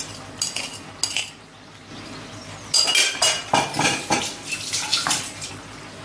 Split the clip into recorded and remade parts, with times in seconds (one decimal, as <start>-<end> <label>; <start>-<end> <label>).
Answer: 0.0-3.4 recorded; 3.4-4.2 remade; 4.2-4.9 recorded; 4.9-5.5 remade; 5.5-6.0 recorded